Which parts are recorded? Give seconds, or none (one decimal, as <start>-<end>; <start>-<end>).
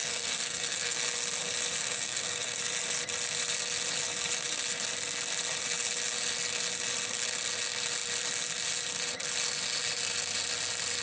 1.0-1.8; 2.6-11.0